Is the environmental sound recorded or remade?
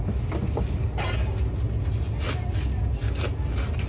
recorded